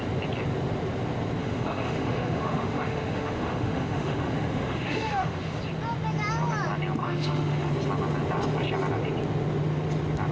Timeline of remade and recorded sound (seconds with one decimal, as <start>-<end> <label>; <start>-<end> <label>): 0.0-1.4 recorded; 1.4-5.6 remade; 5.6-7.0 recorded; 7.0-7.7 remade; 7.7-10.3 recorded